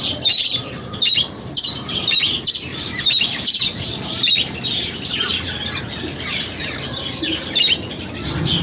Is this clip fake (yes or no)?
yes